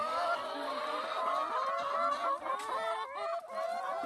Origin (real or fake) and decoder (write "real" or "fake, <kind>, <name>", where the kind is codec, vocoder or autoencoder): real